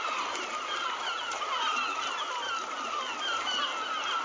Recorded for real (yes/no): yes